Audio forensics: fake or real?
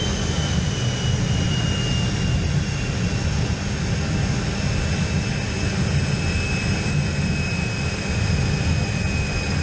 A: real